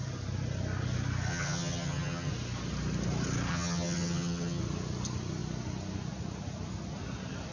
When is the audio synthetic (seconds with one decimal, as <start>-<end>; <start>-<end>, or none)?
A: 1.3-2.3; 3.5-4.6